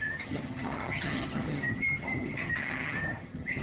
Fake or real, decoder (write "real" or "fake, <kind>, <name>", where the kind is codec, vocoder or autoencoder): fake, vocoder, HiFi-GAN